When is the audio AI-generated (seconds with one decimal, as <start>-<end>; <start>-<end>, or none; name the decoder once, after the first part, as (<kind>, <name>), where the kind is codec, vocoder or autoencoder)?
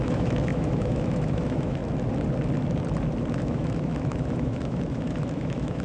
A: 0.0-1.8 (autoencoder, DAC-VAE); 3.3-5.8